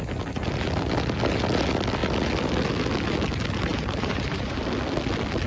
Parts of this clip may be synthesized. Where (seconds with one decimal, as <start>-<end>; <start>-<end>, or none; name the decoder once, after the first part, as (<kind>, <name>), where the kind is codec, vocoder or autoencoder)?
3.7-4.6 (vocoder, BigVGAN v2)